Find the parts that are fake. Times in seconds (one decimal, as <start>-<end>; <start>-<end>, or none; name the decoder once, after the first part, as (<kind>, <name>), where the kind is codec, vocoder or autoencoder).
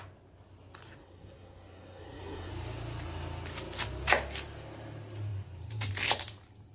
1.0-2.5 (codec, SNAC)